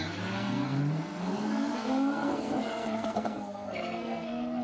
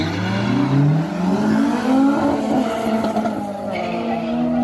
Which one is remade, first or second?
first